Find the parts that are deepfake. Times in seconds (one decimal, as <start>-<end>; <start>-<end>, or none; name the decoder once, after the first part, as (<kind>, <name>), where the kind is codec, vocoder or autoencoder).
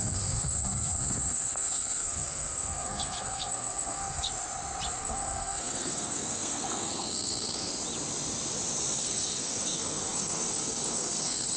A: 0.0-4.3 (codec, SNAC); 5.0-7.7; 9.0-11.6